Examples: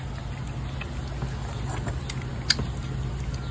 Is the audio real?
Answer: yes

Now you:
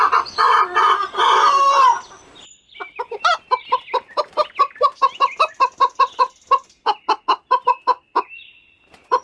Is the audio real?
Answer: yes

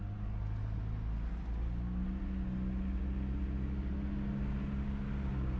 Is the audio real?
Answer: yes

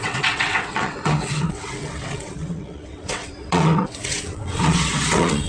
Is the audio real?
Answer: no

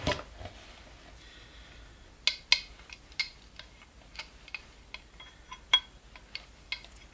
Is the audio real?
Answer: yes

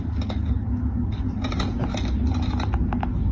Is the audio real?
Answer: yes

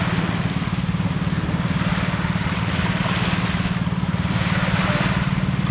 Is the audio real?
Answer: yes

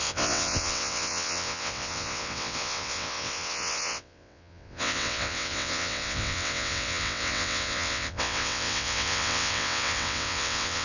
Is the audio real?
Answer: no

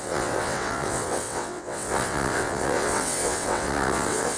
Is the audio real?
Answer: no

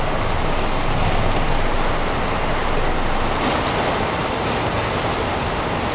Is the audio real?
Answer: yes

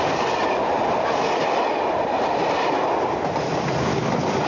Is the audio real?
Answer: yes